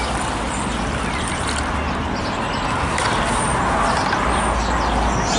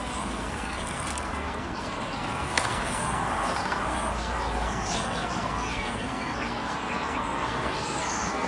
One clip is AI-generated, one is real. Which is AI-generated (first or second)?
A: second